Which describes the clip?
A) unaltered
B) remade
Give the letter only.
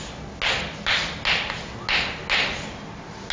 A